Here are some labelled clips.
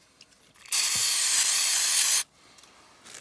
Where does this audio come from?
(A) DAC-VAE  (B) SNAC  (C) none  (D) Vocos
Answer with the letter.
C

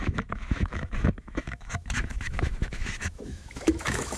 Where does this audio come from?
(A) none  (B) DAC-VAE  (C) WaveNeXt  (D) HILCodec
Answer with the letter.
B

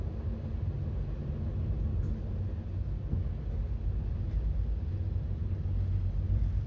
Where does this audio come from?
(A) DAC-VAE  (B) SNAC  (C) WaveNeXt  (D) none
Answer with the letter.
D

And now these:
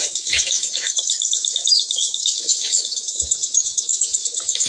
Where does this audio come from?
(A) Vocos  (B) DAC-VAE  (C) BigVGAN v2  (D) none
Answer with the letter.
B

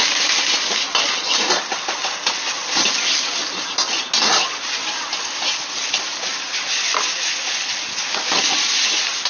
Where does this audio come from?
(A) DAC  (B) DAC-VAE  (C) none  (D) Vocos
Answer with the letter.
C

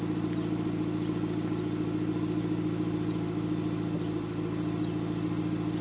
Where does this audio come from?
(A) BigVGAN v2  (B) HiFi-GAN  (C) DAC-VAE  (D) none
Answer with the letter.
D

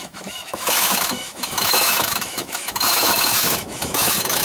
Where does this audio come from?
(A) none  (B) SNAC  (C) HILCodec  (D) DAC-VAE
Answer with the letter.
D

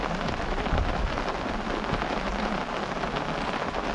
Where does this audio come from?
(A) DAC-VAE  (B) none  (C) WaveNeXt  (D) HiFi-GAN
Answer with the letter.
B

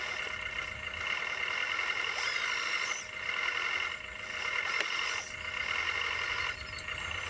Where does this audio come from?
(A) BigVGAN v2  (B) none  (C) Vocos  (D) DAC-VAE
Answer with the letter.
B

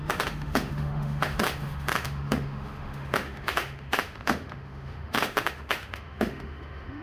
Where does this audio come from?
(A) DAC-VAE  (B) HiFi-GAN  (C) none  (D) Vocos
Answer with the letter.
A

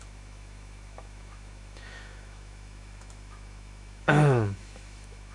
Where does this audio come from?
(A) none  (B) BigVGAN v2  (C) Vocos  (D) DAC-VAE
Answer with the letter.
D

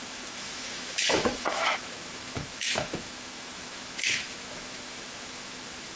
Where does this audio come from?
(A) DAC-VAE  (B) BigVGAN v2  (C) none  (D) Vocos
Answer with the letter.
A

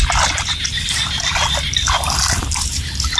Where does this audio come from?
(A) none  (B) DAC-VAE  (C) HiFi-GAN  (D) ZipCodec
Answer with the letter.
A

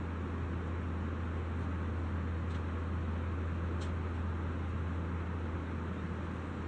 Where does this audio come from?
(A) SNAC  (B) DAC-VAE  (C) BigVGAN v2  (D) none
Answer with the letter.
D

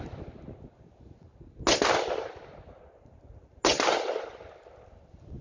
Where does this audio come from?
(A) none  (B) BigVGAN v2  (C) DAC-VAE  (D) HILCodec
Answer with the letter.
A